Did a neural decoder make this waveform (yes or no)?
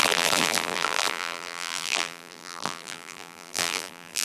yes